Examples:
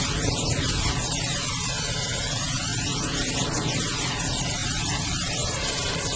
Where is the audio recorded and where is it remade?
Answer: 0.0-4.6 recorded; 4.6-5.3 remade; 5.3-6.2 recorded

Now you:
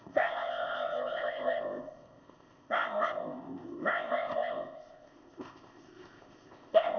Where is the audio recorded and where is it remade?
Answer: 0.0-7.0 remade